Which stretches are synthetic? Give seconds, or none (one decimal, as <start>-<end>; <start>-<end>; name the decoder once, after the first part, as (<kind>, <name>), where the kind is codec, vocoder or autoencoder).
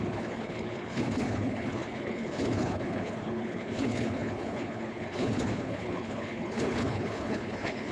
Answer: 0.0-7.9 (codec, HILCodec)